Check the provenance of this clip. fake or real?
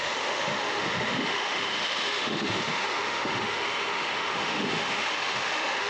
fake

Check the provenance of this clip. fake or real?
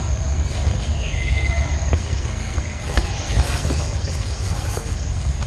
fake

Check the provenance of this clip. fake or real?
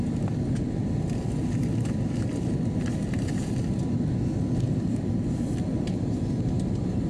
real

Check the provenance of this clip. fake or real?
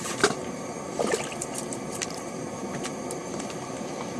real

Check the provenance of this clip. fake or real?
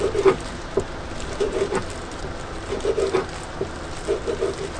real